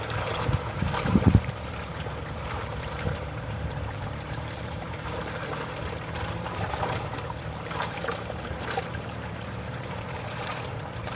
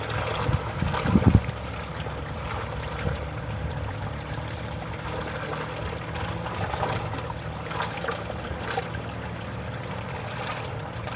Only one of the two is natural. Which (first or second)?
second